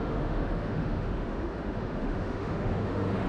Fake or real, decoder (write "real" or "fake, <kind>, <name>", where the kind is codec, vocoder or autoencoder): fake, autoencoder, DAC-VAE